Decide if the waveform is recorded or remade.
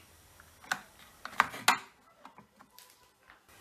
recorded